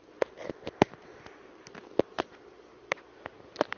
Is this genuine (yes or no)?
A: yes